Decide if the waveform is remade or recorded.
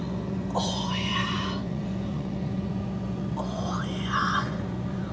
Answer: remade